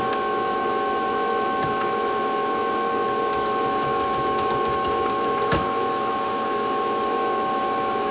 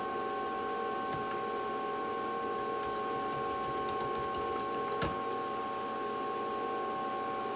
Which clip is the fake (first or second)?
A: first